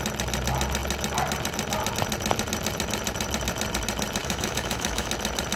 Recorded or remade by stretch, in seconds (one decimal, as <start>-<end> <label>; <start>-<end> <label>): 0.0-4.2 recorded; 4.2-5.1 remade; 5.1-5.6 recorded